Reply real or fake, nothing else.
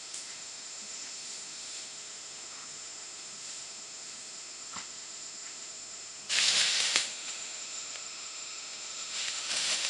fake